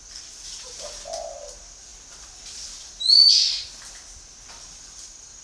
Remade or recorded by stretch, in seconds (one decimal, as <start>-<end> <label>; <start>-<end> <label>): 0.0-5.4 recorded